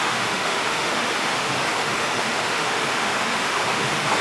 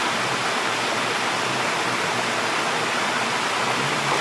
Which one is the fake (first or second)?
first